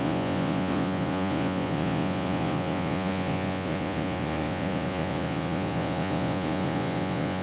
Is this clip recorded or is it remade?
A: remade